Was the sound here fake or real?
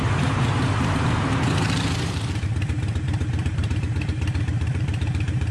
fake